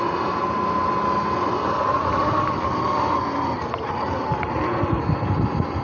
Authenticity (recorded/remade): recorded